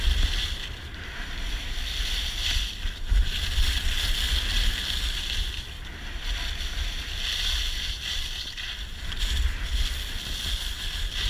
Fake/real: real